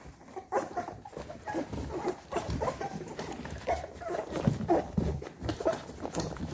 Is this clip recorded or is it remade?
remade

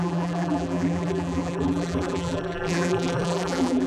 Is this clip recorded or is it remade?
remade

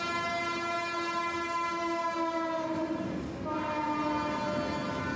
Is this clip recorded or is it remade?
recorded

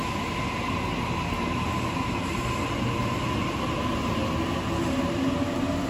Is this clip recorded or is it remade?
recorded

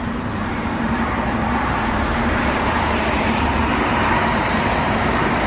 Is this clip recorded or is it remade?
remade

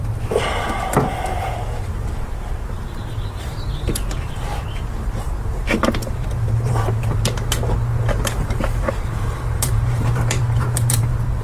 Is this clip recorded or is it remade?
remade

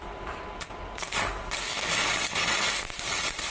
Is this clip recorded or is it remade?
remade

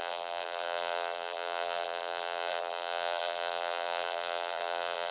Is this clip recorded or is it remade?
remade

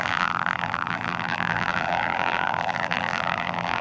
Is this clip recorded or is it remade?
remade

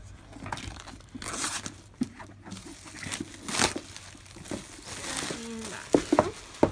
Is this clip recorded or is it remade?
recorded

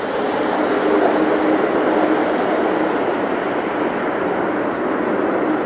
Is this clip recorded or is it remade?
recorded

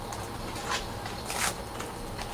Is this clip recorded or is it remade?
recorded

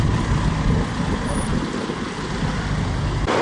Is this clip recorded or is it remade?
remade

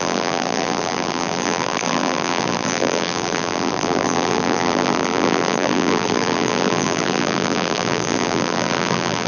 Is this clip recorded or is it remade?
remade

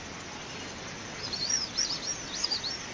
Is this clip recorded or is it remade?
recorded